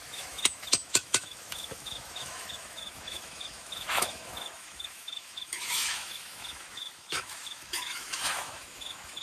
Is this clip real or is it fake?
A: fake